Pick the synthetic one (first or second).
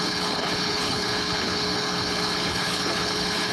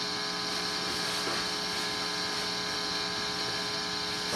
first